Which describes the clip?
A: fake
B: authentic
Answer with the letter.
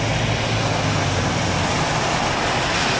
B